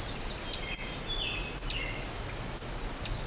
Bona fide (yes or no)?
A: yes